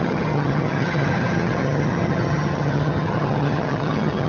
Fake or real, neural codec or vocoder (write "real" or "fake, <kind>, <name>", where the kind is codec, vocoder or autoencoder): fake, vocoder, HiFi-GAN